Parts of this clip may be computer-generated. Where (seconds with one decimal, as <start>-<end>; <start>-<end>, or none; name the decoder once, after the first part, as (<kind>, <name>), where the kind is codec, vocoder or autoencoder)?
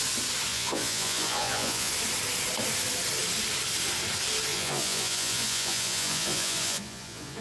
0.5-1.9 (vocoder, Vocos); 4.5-7.4